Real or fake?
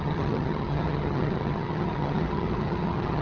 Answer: fake